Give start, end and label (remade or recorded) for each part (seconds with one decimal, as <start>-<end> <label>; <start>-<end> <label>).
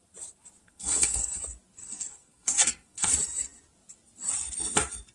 0.0-0.6 recorded; 0.6-1.4 remade; 1.4-1.8 recorded; 1.8-3.1 remade; 3.1-5.1 recorded